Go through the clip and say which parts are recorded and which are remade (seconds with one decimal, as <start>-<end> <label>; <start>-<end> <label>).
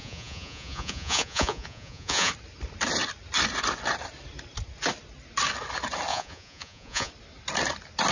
0.0-2.3 remade; 2.3-6.1 recorded; 6.1-7.1 remade; 7.1-8.1 recorded